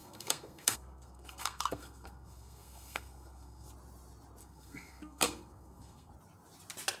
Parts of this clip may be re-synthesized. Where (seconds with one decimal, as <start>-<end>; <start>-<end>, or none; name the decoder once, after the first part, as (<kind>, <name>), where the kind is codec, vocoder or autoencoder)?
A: 0.0-3.7 (codec, SNAC); 4.4-6.1

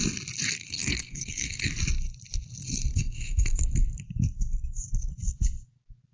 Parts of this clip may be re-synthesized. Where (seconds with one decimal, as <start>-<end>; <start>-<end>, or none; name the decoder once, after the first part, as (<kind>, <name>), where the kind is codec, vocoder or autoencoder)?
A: 0.6-1.7 (codec, SNAC); 2.6-3.6